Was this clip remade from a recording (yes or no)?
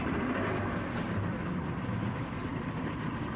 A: no